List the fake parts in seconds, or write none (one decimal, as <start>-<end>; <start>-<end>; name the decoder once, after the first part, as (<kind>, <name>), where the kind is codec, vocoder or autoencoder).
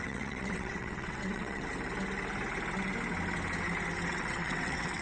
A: 0.0-1.7 (vocoder, WaveNeXt); 4.1-5.0